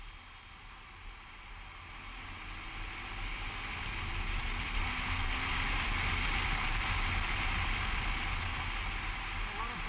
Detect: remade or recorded recorded